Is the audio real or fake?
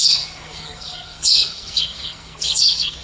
fake